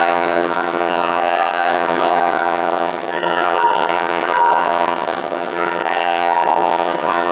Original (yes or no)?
no